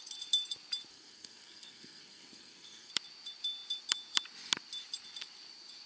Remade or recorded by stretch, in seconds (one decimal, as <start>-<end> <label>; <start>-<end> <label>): 0.0-0.9 recorded; 0.9-2.9 remade; 2.9-5.9 recorded